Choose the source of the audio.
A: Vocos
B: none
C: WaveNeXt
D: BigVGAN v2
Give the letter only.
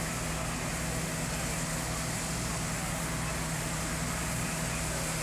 B